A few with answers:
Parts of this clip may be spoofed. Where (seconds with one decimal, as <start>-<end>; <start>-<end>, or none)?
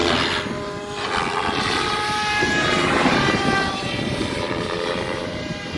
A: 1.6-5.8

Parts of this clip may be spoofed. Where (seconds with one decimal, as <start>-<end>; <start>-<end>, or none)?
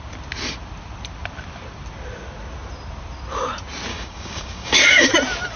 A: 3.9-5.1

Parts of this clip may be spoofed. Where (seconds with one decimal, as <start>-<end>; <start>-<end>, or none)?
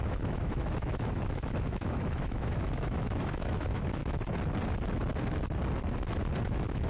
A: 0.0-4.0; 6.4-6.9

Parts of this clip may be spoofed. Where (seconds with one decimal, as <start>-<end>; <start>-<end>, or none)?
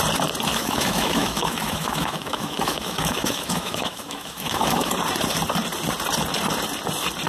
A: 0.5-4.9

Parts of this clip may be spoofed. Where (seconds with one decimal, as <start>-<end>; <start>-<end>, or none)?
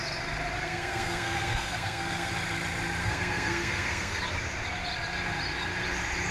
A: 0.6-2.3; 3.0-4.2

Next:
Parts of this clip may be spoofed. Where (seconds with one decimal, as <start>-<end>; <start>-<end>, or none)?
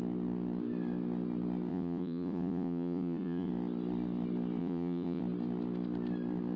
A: 1.7-3.5; 4.6-5.2